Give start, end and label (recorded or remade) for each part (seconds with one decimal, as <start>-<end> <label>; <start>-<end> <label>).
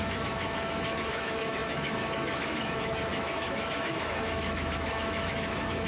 0.0-5.9 remade